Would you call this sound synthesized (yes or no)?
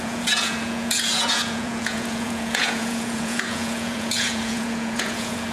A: yes